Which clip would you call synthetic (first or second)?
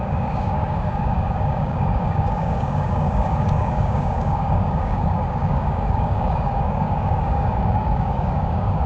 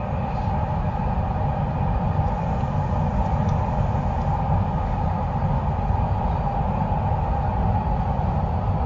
first